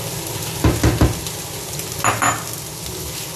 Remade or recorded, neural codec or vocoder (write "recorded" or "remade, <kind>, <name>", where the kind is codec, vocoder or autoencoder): recorded